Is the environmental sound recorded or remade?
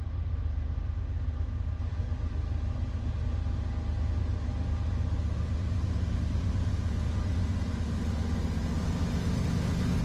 recorded